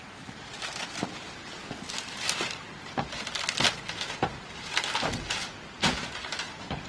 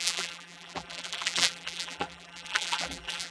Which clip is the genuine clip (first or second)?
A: first